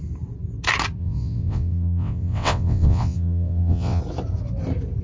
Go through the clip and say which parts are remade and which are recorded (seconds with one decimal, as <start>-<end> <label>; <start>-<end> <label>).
0.0-1.0 recorded; 1.0-4.0 remade; 4.0-5.0 recorded